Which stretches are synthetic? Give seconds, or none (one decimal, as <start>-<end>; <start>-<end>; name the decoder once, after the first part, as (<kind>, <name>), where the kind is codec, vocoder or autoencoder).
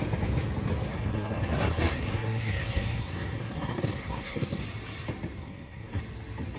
0.9-4.6 (codec, SNAC); 5.4-6.0